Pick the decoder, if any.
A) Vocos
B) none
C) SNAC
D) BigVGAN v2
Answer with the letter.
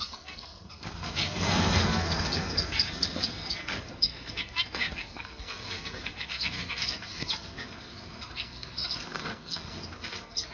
C